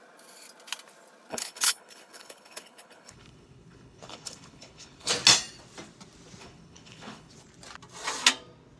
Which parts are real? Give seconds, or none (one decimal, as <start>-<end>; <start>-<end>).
0.0-1.3; 5.1-6.4; 7.3-8.8